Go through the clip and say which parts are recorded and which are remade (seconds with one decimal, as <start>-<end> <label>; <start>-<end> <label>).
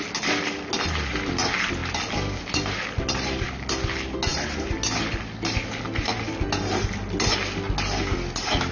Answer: 0.0-8.7 recorded